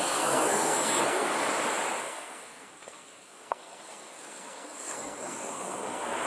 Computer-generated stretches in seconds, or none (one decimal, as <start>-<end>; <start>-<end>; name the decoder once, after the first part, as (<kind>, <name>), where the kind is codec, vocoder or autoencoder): 0.0-1.3 (codec, SNAC); 2.0-6.3